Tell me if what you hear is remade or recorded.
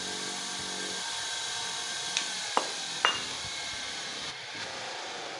recorded